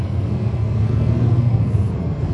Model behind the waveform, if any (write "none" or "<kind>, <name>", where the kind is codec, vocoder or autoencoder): codec, SNAC